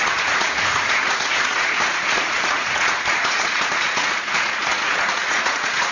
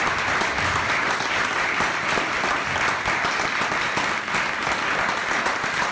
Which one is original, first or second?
second